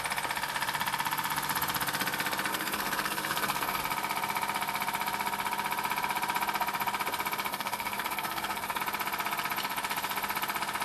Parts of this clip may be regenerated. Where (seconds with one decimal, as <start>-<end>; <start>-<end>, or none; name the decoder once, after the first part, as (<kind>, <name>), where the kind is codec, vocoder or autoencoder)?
2.5-3.8 (codec, SNAC); 7.5-8.8